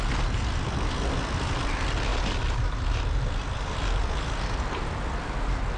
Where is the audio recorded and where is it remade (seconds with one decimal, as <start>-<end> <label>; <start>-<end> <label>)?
0.0-5.8 recorded

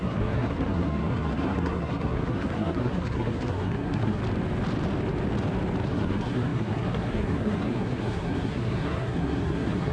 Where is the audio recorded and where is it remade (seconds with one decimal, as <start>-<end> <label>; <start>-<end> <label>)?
0.0-4.2 remade; 4.2-5.9 recorded; 5.9-9.9 remade